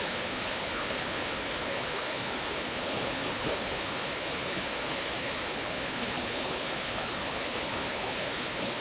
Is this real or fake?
fake